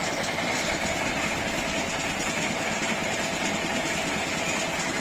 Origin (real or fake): real